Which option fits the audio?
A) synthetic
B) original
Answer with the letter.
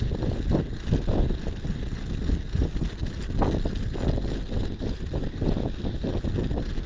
B